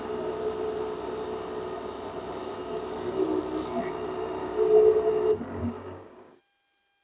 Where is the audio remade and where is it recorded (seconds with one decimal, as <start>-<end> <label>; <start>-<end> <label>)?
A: 0.0-2.4 recorded; 2.4-3.4 remade; 3.4-4.4 recorded; 4.4-5.1 remade; 5.1-5.6 recorded; 5.6-6.4 remade; 6.4-7.0 recorded